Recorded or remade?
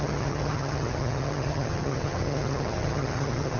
remade